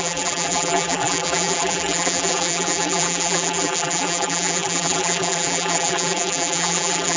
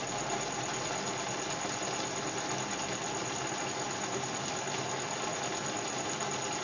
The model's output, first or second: first